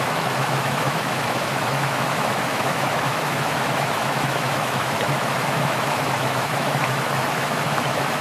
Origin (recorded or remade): remade